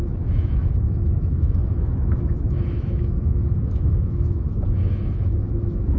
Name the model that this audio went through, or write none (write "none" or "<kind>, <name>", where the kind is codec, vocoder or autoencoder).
autoencoder, DAC-VAE